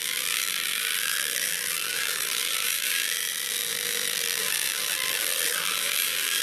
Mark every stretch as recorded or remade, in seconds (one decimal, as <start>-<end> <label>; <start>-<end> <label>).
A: 0.0-6.4 remade